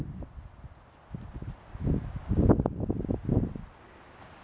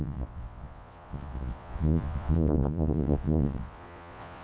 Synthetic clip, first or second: second